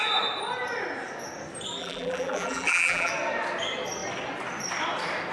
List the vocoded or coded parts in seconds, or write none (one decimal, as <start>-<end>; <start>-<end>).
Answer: 1.8-3.1